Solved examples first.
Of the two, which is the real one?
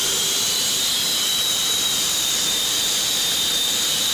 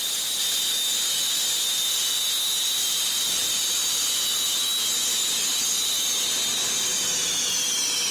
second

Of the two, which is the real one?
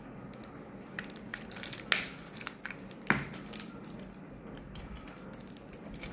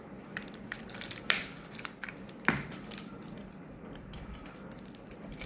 first